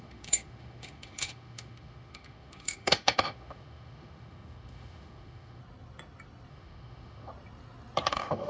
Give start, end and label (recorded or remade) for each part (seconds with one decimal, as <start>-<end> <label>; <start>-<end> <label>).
0.0-5.6 remade; 5.6-6.5 recorded; 6.5-7.3 remade; 7.3-8.1 recorded; 8.1-8.5 remade